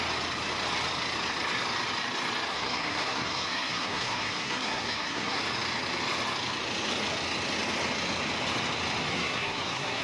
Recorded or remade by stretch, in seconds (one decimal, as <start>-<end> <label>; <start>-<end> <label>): 0.0-2.5 recorded; 2.5-5.4 remade; 5.4-9.1 recorded; 9.1-10.0 remade